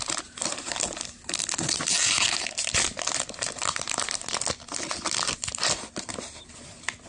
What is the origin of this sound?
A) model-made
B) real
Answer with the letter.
B